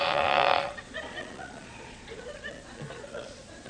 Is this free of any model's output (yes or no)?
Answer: no